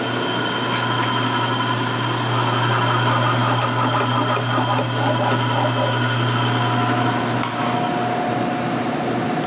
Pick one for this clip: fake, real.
real